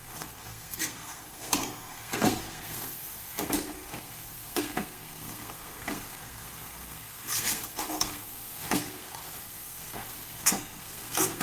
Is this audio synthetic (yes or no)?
yes